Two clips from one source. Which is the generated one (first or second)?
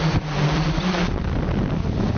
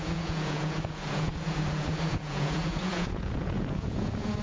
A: second